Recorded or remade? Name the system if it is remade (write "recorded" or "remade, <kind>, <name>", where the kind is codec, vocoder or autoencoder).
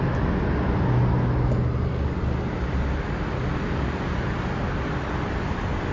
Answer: recorded